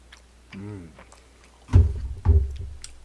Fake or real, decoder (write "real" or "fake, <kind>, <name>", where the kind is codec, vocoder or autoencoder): real